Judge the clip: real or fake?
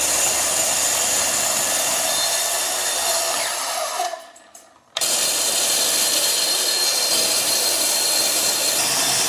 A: fake